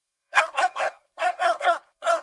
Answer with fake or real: fake